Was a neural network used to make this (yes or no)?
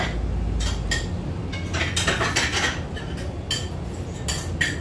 no